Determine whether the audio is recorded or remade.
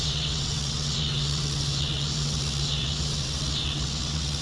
remade